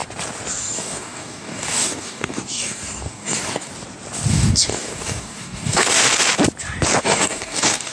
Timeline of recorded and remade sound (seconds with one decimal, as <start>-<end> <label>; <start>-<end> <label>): 0.0-0.6 recorded; 0.6-3.7 remade; 3.7-4.3 recorded; 4.3-6.0 remade; 6.0-7.0 recorded; 7.0-7.9 remade